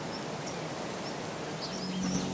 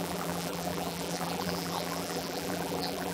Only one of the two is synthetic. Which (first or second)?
second